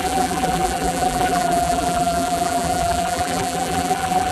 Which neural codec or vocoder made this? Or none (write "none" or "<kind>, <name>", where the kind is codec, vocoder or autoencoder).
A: vocoder, BigVGAN v2